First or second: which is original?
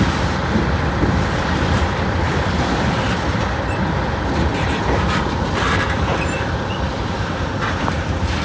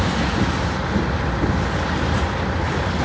second